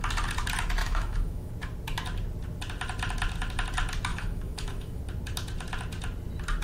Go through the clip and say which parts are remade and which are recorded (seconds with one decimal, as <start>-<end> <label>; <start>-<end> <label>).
0.0-0.8 recorded; 0.8-1.5 remade; 1.5-4.1 recorded; 4.1-5.0 remade; 5.0-6.6 recorded